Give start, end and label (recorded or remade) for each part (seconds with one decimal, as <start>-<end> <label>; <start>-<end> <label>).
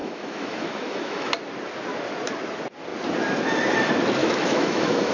0.0-1.3 remade; 1.3-4.2 recorded; 4.2-5.1 remade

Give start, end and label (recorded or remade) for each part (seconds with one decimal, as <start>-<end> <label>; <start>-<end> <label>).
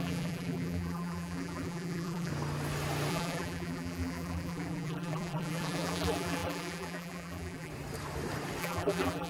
0.0-2.3 remade; 2.3-3.1 recorded; 3.1-7.7 remade; 7.7-8.6 recorded; 8.6-9.3 remade